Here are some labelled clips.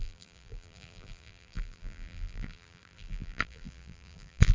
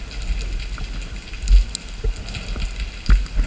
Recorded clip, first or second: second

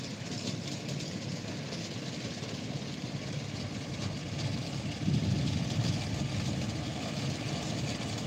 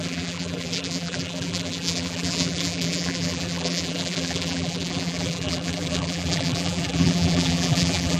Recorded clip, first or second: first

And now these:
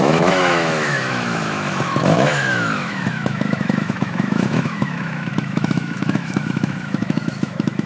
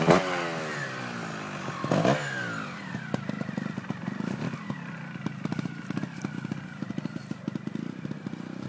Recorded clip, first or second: second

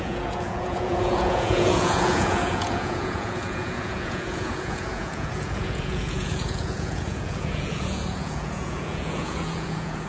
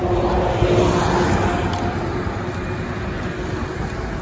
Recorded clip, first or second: second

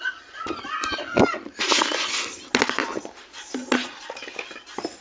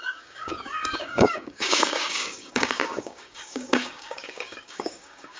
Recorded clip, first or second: first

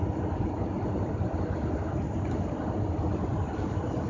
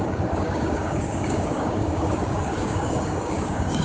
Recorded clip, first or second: first